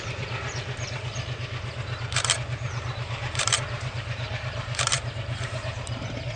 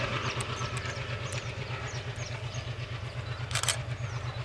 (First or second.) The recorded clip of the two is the second